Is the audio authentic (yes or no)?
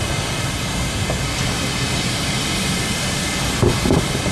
yes